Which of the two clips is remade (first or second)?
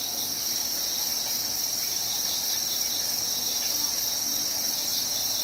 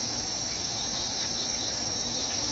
second